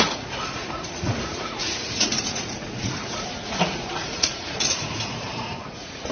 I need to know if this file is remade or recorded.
remade